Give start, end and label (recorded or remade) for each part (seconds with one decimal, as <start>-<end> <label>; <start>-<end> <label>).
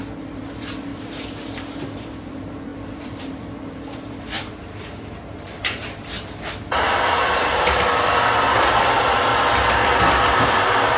0.0-9.3 remade; 9.3-10.0 recorded; 10.0-11.0 remade